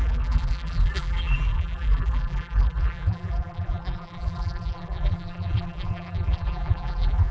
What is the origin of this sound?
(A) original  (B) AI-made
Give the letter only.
B